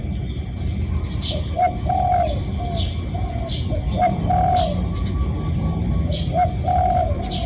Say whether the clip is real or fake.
real